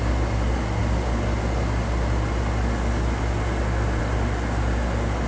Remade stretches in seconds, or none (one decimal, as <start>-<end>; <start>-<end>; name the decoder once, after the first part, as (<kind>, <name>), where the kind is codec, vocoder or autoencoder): none